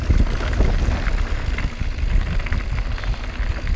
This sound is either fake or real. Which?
real